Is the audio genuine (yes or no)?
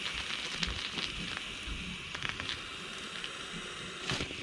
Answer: yes